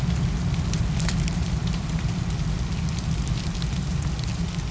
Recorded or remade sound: recorded